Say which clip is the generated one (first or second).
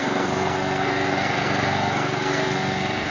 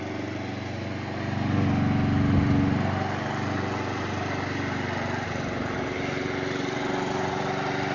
first